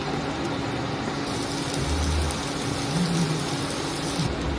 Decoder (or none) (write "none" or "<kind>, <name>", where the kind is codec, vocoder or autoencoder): none